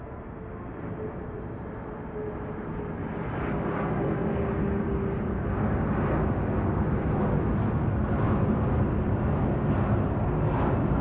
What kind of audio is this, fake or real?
real